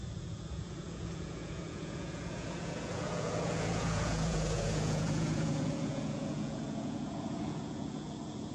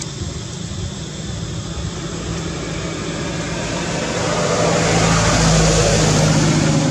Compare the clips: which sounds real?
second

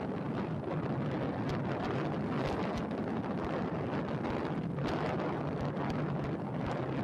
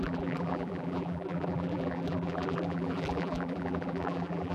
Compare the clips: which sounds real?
first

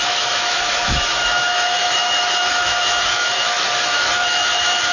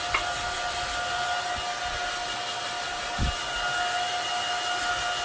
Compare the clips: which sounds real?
second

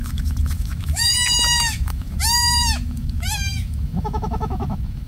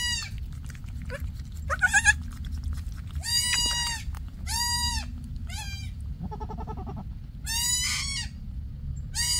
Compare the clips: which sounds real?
second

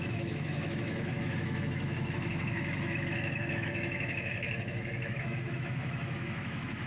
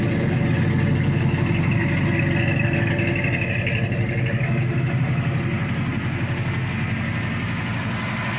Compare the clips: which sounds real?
second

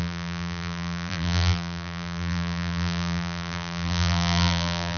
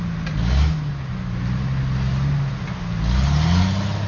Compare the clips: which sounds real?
second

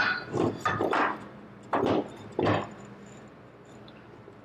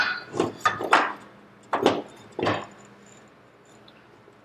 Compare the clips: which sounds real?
second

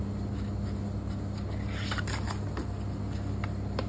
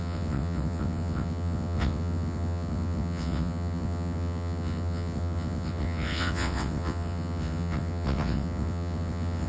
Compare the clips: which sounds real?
first